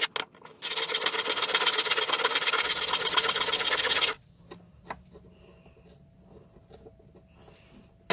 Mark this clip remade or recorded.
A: recorded